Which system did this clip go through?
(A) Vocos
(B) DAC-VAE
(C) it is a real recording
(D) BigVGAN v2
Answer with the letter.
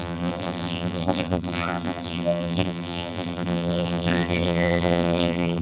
D